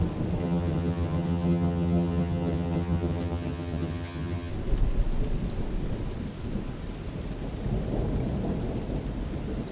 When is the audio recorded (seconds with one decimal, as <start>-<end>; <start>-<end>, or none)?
0.0-0.4; 4.5-9.7